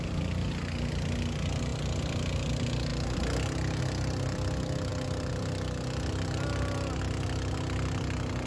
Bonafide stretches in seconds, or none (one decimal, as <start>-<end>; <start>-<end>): 0.0-8.5